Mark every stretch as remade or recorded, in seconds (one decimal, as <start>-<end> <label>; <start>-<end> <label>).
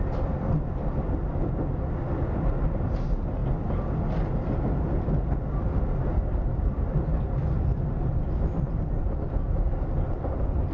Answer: 0.0-10.7 recorded